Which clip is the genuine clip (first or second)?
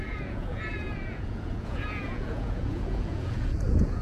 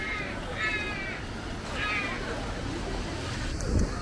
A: second